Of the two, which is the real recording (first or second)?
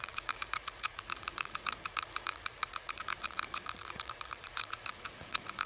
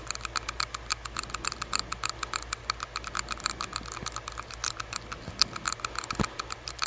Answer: second